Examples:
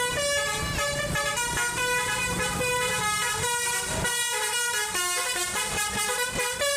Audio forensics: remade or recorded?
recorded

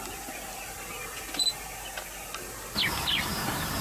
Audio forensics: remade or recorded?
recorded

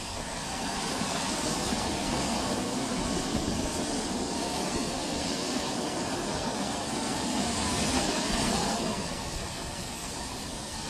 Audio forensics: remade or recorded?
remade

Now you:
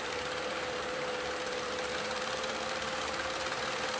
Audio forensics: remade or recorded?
remade